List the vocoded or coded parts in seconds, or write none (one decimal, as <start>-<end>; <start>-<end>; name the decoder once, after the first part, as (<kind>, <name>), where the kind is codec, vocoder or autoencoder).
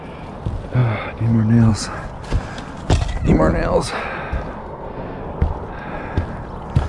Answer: 4.6-5.2 (codec, SNAC)